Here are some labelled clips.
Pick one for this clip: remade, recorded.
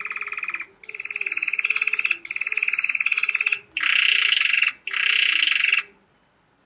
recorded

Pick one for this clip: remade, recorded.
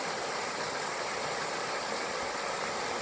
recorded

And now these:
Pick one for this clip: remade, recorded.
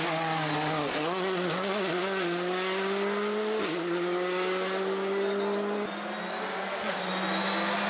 recorded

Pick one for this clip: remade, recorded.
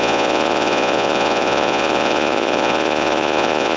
remade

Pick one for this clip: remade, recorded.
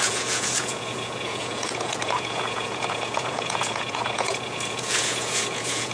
remade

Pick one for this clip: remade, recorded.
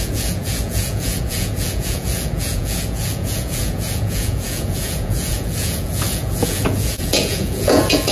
remade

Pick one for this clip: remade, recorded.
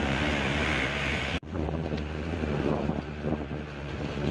remade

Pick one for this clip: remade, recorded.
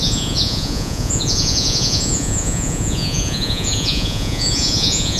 remade